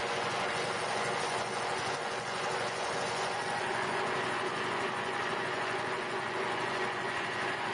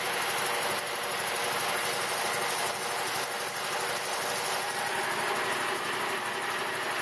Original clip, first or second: second